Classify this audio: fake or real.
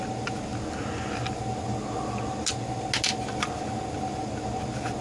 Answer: real